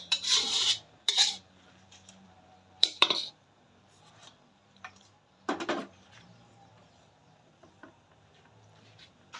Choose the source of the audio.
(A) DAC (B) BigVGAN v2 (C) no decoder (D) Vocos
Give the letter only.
B